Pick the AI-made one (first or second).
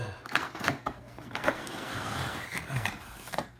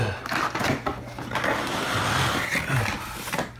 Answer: first